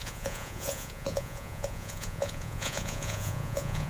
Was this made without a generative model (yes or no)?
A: no